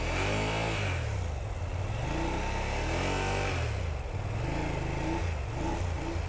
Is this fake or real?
real